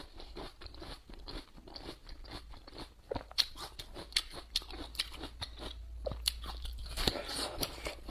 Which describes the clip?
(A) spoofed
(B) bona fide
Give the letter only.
B